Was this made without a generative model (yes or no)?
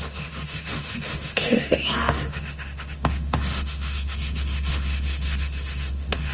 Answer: no